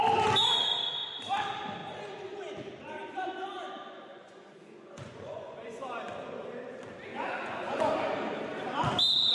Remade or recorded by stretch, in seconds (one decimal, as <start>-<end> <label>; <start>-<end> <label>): 0.0-4.1 recorded; 4.1-6.1 remade; 6.1-7.1 recorded; 7.1-7.9 remade; 7.9-9.3 recorded